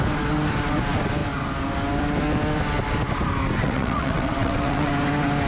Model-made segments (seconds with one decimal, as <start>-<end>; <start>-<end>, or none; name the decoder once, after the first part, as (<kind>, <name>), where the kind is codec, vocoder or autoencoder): 3.6-4.9 (vocoder, WaveNeXt)